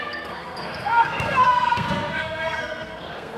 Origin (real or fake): fake